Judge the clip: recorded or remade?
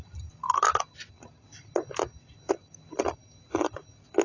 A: recorded